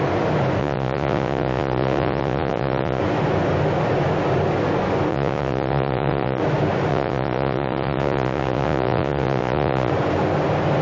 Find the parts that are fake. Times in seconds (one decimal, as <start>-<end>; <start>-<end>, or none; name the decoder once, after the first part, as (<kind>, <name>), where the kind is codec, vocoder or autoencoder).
0.6-3.0 (vocoder, Vocos); 5.1-6.4; 6.9-9.9